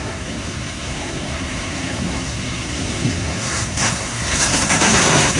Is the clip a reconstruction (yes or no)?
yes